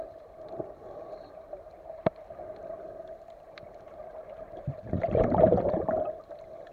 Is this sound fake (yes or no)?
yes